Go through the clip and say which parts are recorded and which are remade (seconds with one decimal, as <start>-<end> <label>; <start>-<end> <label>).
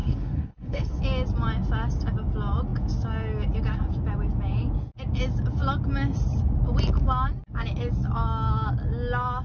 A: 0.0-1.0 remade; 1.0-9.4 recorded